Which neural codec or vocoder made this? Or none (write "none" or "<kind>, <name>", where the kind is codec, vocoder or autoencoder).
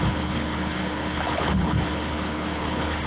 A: codec, HILCodec